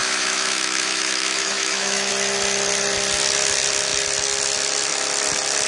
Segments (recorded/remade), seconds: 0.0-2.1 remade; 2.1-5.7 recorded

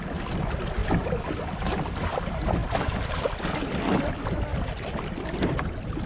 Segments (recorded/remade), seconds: 0.0-6.1 recorded

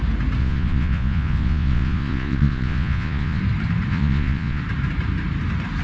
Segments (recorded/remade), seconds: 0.0-0.4 recorded; 0.4-3.4 remade; 3.4-3.9 recorded; 3.9-4.6 remade; 4.6-5.8 recorded

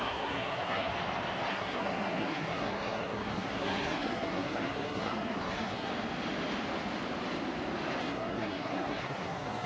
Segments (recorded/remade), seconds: 0.0-0.9 remade; 0.9-1.5 recorded; 1.5-5.9 remade; 5.9-8.0 recorded; 8.0-9.7 remade

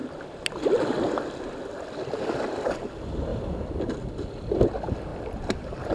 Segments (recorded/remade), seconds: 0.0-3.3 recorded; 3.3-3.9 remade; 3.9-5.1 recorded; 5.1-5.9 remade